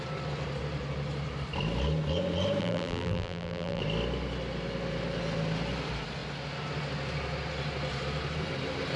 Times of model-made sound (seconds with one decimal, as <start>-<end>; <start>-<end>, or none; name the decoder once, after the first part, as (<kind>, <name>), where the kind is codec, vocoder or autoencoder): 2.6-3.8 (vocoder, BigVGAN v2)